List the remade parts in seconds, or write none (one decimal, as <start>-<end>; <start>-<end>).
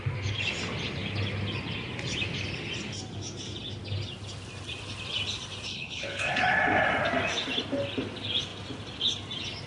5.7-6.4